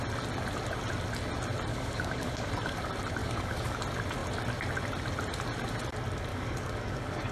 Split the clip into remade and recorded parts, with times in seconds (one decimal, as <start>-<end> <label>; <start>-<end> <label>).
0.0-1.7 recorded; 1.7-2.5 remade; 2.5-3.2 recorded; 3.2-3.8 remade; 3.8-6.3 recorded; 6.3-7.3 remade